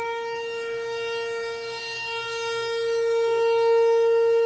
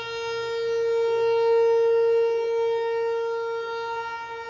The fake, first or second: first